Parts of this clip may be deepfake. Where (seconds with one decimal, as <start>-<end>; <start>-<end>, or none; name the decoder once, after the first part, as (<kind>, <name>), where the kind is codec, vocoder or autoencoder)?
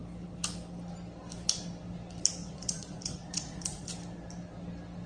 2.4-3.9 (vocoder, Vocos)